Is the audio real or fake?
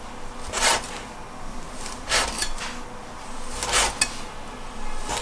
real